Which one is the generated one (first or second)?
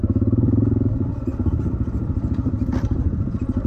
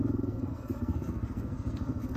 second